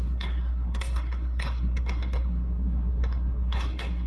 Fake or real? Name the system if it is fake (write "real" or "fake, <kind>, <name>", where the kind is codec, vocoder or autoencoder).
fake, codec, SNAC